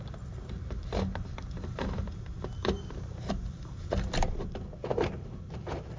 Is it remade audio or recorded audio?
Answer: remade